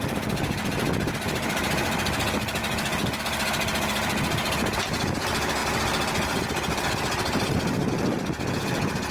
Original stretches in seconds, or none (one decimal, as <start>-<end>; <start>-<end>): 2.6-3.2; 5.6-7.9